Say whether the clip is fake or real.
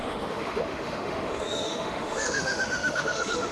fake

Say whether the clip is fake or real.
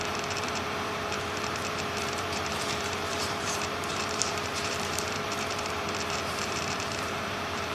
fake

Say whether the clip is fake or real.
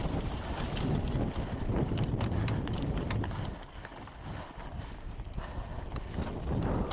real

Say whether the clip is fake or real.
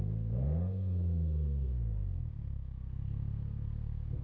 fake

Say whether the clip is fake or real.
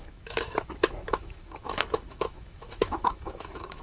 fake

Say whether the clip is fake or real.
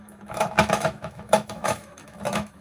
fake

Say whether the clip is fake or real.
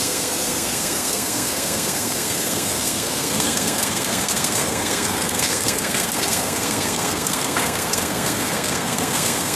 fake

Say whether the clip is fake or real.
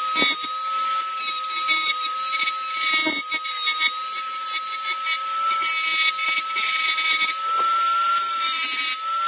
real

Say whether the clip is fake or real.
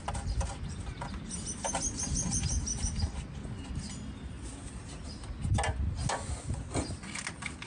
real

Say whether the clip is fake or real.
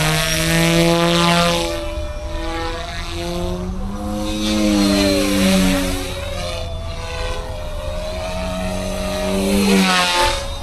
real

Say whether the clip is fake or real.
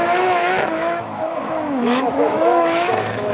fake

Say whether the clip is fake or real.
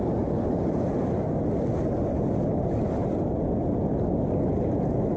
real